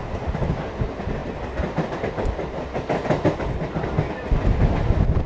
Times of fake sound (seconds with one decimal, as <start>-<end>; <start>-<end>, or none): none